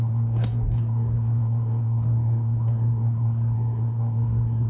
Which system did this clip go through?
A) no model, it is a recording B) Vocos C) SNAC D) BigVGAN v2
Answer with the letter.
C